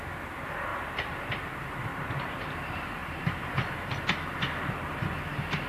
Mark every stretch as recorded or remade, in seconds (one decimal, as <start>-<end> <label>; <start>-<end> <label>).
0.0-0.7 recorded; 0.7-1.5 remade; 1.5-1.9 recorded; 1.9-2.5 remade; 2.5-3.0 recorded; 3.0-3.5 remade; 3.5-5.7 recorded